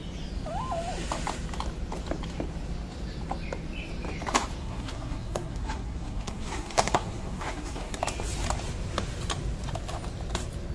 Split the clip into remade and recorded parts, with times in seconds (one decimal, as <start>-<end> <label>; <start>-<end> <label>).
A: 0.0-4.6 recorded; 4.6-8.0 remade; 8.0-10.7 recorded

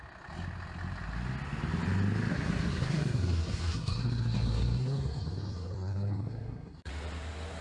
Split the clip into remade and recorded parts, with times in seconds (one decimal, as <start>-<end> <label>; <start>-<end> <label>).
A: 0.0-2.3 recorded; 2.3-6.9 remade; 6.9-7.6 recorded

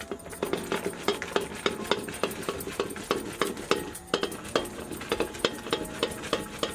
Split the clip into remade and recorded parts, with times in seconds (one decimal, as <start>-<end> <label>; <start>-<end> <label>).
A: 0.0-6.7 recorded

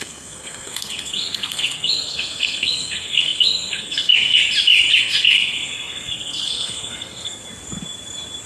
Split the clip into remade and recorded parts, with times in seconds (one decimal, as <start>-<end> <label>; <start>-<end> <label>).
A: 0.0-4.4 remade; 4.4-5.0 recorded; 5.0-7.4 remade; 7.4-8.5 recorded

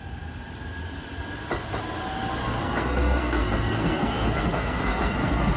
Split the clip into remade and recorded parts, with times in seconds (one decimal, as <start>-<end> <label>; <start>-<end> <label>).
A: 0.0-2.4 recorded; 2.4-5.6 remade

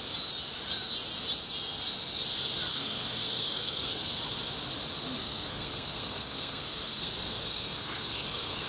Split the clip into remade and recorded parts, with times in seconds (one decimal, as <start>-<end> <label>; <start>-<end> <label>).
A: 0.0-2.7 recorded; 2.7-4.2 remade; 4.2-5.2 recorded; 5.2-8.7 remade